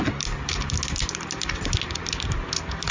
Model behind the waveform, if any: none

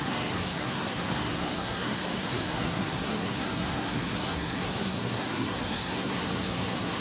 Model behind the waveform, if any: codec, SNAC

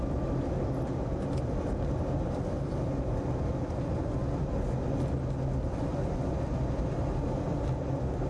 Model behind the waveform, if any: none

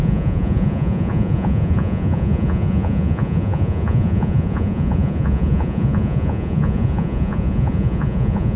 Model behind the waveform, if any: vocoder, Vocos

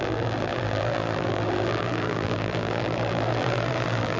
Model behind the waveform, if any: vocoder, BigVGAN v2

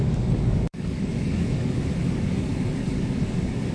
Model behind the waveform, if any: codec, DAC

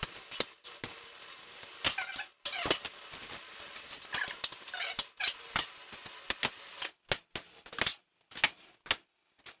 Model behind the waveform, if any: none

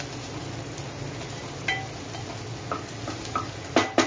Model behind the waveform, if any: none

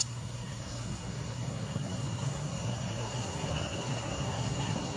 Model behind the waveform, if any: codec, SNAC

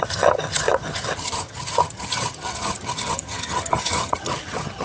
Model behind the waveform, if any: vocoder, HiFi-GAN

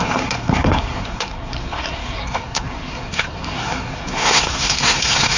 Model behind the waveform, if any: codec, SNAC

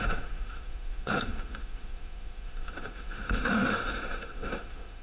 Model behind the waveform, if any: autoencoder, DAC-VAE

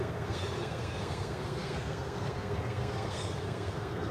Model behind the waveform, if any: codec, SNAC